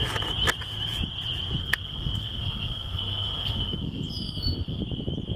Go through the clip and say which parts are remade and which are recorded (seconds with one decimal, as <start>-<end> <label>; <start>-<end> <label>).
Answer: 0.0-1.6 recorded; 1.6-4.8 remade; 4.8-5.4 recorded